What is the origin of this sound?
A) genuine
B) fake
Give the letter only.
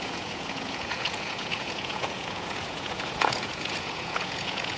B